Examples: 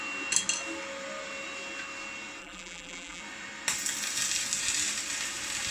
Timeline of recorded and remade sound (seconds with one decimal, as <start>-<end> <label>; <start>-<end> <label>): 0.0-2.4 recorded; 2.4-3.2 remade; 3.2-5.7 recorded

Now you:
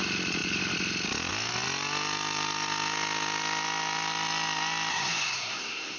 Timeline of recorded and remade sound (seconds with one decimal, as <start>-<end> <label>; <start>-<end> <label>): 0.0-4.9 recorded; 4.9-6.0 remade

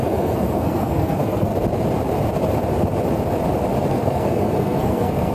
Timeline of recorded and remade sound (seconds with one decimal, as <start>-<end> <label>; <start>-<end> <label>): 0.0-1.5 remade; 1.5-3.9 recorded; 3.9-5.3 remade

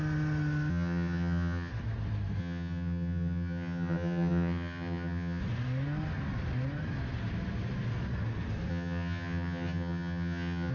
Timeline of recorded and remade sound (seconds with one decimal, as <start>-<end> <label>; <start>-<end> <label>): 0.0-0.7 recorded; 0.7-1.7 remade; 1.7-2.4 recorded; 2.4-5.4 remade; 5.4-8.7 recorded; 8.7-10.7 remade